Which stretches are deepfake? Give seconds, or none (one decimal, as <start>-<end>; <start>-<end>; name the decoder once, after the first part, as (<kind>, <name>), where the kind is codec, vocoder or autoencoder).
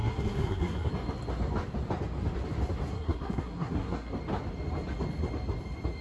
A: 0.0-0.9 (codec, SNAC); 2.9-4.1